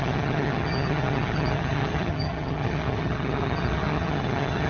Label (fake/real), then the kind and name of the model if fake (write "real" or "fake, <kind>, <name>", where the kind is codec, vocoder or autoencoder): fake, vocoder, HiFi-GAN